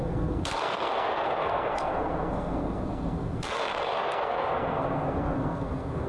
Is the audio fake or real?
fake